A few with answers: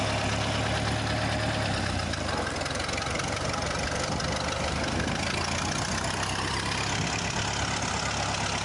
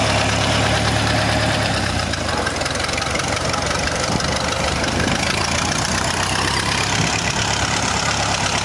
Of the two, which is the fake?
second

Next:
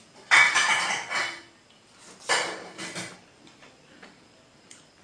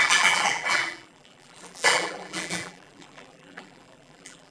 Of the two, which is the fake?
second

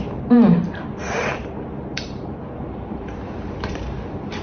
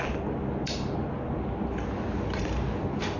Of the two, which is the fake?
first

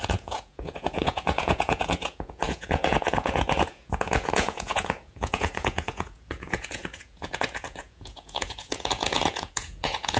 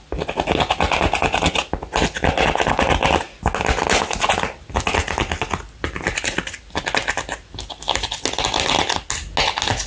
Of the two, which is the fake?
first